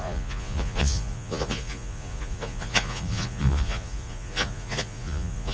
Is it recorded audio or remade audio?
remade